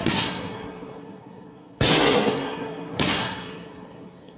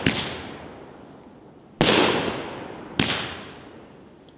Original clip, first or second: second